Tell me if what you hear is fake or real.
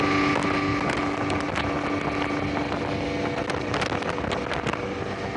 real